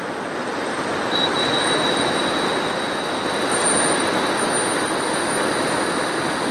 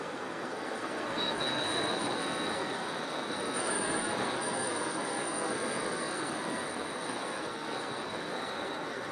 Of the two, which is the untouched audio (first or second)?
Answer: first